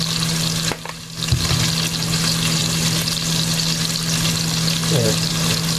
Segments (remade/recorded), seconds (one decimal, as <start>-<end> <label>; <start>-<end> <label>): 0.0-5.8 recorded